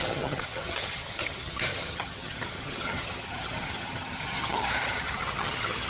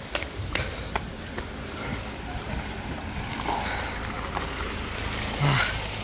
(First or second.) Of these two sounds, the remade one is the first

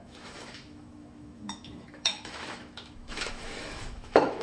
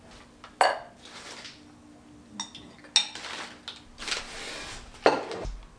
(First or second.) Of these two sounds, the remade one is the first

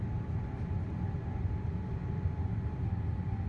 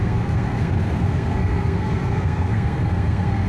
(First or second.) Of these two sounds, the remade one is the second